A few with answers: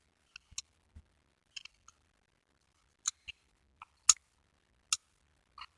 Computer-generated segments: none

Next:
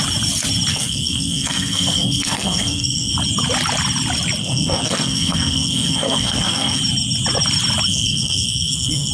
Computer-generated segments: 0.7-3.1 (codec, SNAC); 4.4-6.8; 7.9-9.1

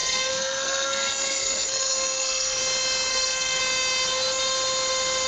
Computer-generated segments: 0.0-2.6 (codec, SNAC); 3.1-3.6

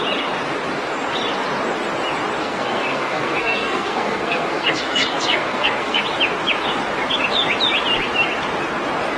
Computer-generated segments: 2.4-6.0 (codec, SNAC)

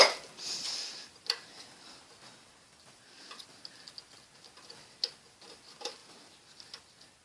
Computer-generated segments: none

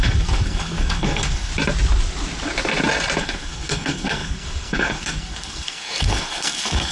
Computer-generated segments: 0.0-1.5 (codec, SNAC); 3.2-6.9

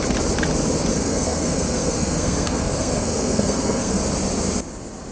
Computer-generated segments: 0.9-4.0 (codec, SNAC)